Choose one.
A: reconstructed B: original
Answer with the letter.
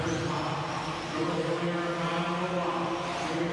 B